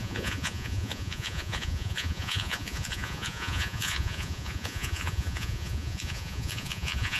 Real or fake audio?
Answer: fake